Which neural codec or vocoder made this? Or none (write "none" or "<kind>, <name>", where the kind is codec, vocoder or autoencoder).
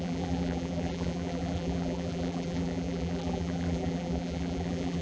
vocoder, BigVGAN v2